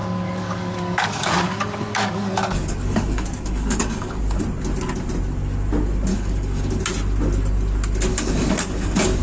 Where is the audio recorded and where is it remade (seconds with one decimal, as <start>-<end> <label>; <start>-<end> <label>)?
0.0-4.4 remade; 4.4-6.1 recorded; 6.1-6.8 remade; 6.8-8.1 recorded; 8.1-9.2 remade